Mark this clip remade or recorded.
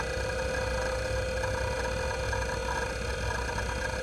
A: recorded